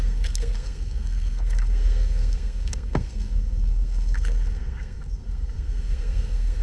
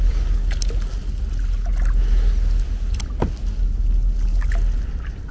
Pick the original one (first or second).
second